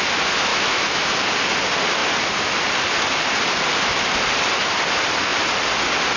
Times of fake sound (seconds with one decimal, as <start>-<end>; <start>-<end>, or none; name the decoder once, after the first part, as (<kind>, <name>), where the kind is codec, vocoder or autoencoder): 0.5-1.1 (autoencoder, DAC-VAE)